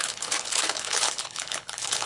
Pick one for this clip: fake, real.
fake